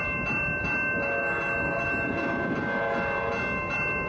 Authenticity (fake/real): real